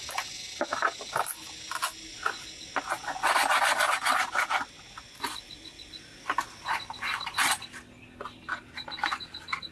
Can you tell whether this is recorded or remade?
recorded